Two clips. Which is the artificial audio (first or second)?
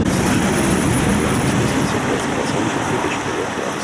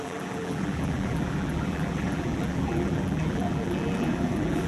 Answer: second